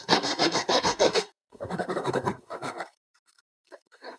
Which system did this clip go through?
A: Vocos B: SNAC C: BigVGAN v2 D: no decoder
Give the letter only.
B